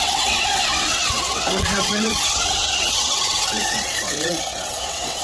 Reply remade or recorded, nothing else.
remade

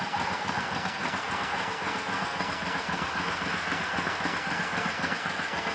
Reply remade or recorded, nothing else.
remade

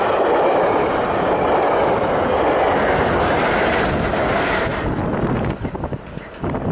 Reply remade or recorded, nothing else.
recorded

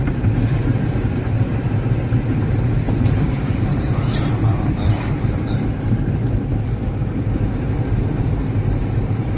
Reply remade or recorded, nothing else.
remade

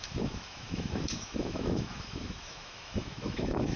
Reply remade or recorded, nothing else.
remade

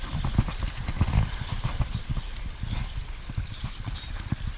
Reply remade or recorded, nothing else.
remade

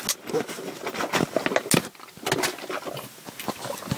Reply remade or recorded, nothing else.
recorded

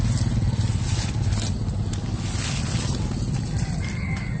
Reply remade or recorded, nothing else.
recorded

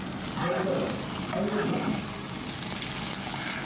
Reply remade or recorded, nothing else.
recorded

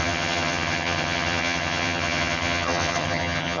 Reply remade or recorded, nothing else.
remade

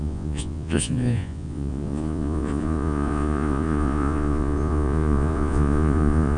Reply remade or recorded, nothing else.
remade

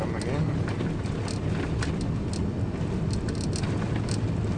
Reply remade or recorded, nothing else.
recorded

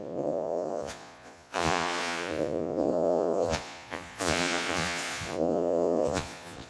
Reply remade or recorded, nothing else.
remade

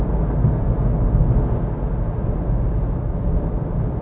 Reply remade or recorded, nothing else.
recorded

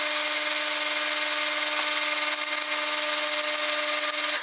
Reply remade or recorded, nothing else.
recorded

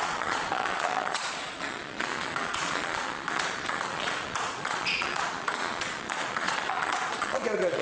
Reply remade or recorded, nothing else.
remade